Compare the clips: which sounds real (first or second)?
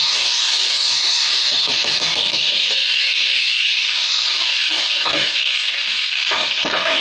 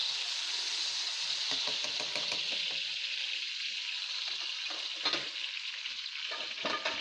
second